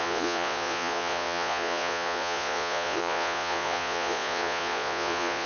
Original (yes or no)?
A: no